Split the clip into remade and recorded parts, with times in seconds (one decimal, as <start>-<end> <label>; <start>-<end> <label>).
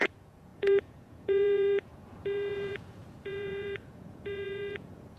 0.0-5.2 remade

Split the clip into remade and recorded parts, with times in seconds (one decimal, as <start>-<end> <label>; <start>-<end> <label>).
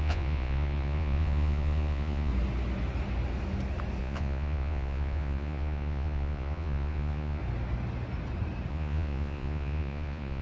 0.0-2.3 remade; 2.3-4.0 recorded; 4.0-7.4 remade; 7.4-8.7 recorded; 8.7-10.4 remade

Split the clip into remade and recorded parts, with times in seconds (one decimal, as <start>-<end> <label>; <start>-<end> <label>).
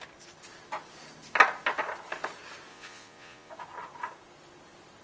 0.0-2.7 recorded; 2.7-3.5 remade; 3.5-5.0 recorded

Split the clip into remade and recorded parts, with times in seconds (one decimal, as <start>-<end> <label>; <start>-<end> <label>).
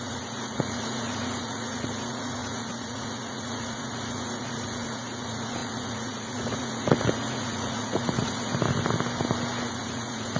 0.0-8.5 remade; 8.5-9.7 recorded; 9.7-10.4 remade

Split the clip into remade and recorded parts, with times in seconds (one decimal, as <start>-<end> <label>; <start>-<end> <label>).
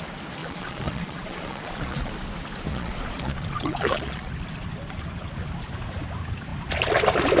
0.0-0.4 recorded; 0.4-2.1 remade; 2.1-2.7 recorded; 2.7-4.3 remade; 4.3-7.4 recorded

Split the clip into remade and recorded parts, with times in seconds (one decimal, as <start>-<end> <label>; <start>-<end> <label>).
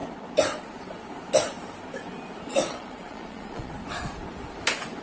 0.0-2.7 recorded; 2.7-3.7 remade; 3.7-5.0 recorded